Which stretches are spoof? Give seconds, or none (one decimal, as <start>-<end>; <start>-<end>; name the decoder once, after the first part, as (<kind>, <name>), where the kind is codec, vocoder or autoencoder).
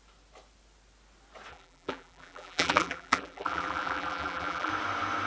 1.5-4.7 (vocoder, BigVGAN v2)